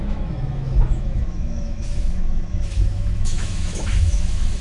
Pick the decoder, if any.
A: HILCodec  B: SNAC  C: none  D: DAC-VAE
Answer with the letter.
D